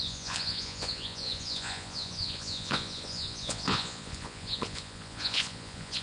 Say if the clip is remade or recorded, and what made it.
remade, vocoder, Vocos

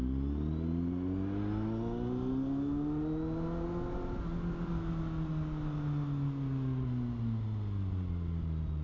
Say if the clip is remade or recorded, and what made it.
recorded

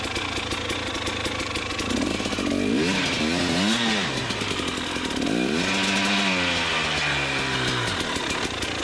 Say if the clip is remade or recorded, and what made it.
recorded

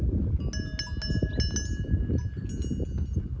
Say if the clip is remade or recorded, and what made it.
recorded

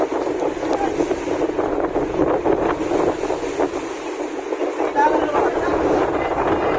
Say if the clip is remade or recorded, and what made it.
recorded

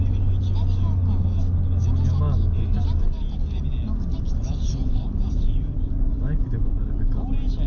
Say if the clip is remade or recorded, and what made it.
recorded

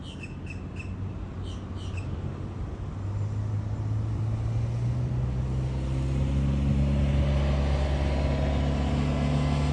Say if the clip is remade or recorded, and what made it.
recorded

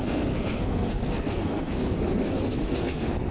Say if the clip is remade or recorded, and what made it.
remade, codec, SNAC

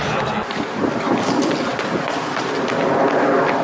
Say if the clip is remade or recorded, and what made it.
recorded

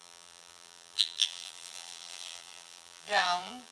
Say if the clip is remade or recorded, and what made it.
remade, vocoder, BigVGAN v2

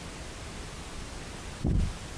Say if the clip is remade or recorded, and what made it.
recorded